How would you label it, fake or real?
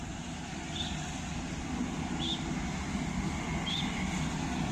real